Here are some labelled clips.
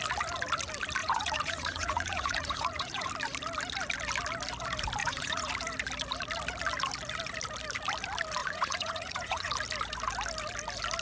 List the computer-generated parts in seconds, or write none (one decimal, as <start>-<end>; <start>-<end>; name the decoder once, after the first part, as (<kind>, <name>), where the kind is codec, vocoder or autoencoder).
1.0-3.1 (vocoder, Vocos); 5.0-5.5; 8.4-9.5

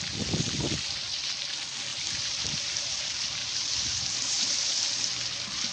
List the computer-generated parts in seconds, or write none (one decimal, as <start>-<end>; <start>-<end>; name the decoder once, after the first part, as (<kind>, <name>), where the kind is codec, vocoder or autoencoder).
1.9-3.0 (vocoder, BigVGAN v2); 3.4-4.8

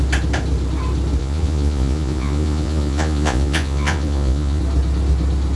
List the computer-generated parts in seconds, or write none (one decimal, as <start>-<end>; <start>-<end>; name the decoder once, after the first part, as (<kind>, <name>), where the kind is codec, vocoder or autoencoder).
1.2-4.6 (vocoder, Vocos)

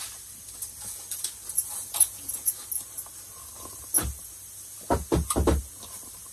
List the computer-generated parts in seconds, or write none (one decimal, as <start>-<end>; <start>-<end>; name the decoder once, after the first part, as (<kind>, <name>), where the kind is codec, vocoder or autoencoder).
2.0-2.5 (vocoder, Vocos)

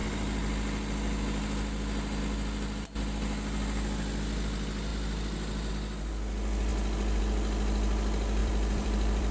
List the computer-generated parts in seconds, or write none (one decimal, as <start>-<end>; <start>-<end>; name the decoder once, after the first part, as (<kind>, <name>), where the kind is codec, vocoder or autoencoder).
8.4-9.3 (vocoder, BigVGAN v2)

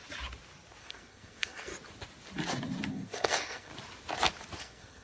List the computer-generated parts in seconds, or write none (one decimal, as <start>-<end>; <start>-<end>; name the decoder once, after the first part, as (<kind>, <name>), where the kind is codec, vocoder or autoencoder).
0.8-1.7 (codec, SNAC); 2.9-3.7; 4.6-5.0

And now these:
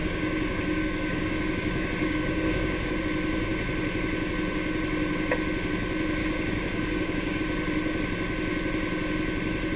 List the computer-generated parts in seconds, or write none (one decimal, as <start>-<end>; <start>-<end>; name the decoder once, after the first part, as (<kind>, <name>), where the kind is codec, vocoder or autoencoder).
0.0-3.0 (codec, DAC); 6.2-7.4